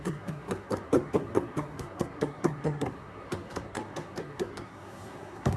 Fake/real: fake